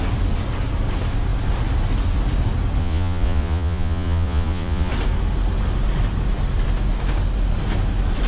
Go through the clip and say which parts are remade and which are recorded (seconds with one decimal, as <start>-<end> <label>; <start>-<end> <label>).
0.0-2.8 recorded; 2.8-4.9 remade; 4.9-8.3 recorded